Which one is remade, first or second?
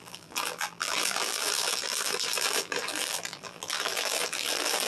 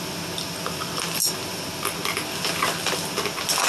first